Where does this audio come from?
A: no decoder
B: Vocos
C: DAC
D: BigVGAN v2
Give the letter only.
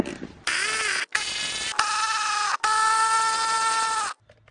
A